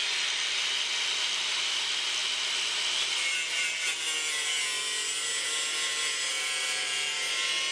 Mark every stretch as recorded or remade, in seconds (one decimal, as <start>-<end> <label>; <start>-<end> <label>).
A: 0.0-7.7 recorded